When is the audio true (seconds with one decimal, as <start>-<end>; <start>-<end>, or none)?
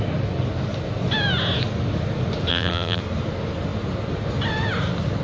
0.0-2.5; 3.0-5.2